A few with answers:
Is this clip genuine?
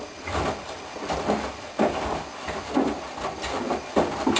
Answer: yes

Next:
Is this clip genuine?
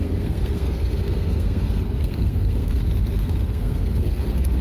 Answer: no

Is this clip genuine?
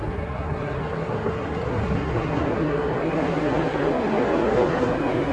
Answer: no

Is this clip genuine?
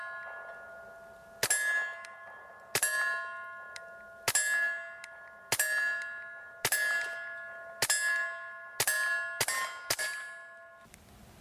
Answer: yes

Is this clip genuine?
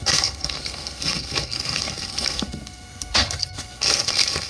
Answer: no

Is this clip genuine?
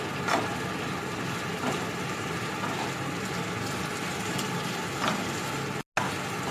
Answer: yes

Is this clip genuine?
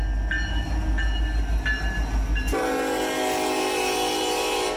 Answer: yes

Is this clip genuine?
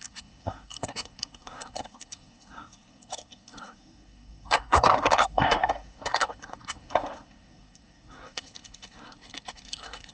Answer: no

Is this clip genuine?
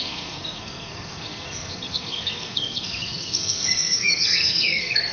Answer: no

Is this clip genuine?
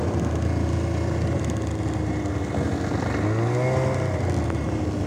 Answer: yes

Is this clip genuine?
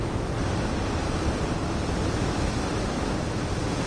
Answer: yes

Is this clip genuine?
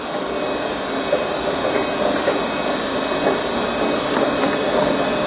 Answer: yes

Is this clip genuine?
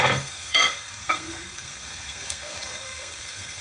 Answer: no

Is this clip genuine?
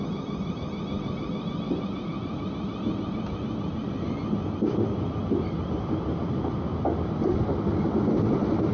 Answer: yes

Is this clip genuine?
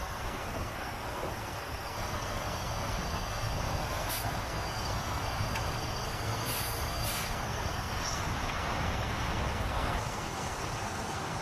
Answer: no